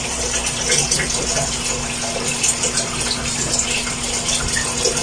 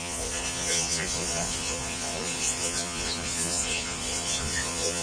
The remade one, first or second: second